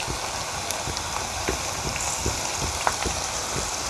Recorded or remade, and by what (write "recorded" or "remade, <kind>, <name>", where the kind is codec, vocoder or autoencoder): recorded